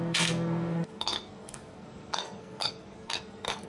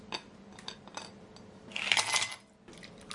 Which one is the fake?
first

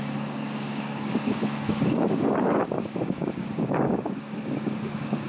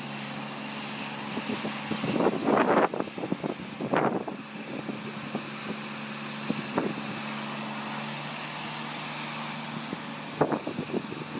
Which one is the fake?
first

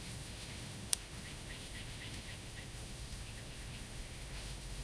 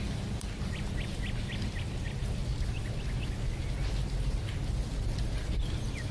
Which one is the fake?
first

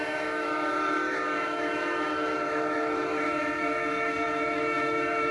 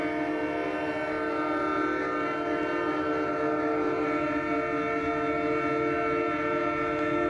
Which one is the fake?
first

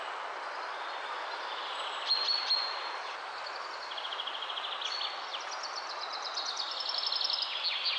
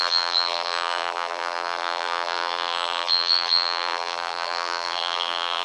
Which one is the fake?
second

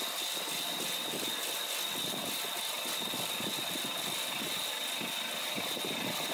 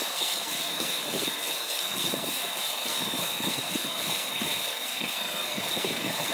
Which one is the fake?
second